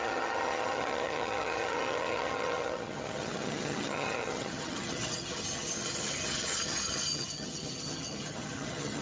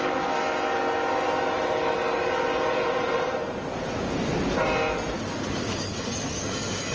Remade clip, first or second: first